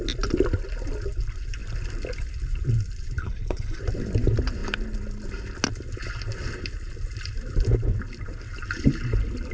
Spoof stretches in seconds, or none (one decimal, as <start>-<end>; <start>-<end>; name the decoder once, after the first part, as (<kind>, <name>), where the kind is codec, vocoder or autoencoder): 3.2-3.8 (codec, HILCodec)